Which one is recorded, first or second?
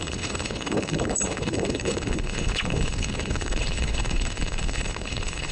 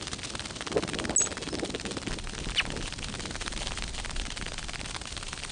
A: second